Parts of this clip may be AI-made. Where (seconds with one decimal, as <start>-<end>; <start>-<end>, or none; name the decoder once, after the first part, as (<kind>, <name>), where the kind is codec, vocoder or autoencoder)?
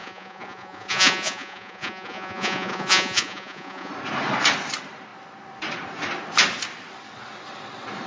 0.0-3.9 (vocoder, Vocos)